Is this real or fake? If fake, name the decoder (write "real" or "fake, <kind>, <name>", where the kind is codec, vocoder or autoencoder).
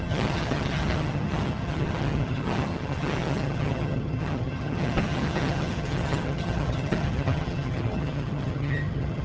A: fake, vocoder, HiFi-GAN